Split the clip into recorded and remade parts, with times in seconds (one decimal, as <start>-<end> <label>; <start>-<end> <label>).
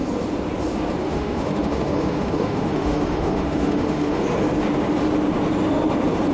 0.0-1.0 recorded; 1.0-4.2 remade; 4.2-6.3 recorded